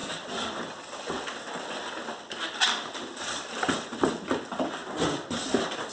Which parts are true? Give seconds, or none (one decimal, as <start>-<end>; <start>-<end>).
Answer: 0.0-5.9